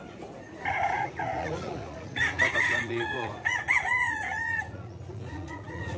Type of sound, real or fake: fake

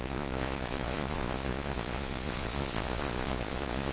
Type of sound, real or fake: fake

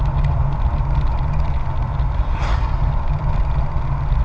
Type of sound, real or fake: real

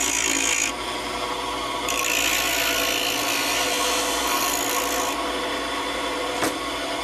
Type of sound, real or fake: real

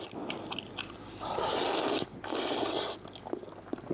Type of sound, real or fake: real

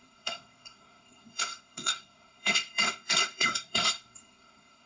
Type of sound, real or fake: fake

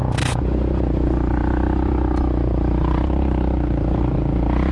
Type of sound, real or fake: real